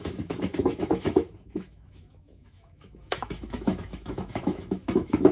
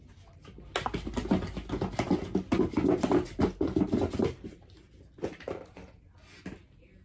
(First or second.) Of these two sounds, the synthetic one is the first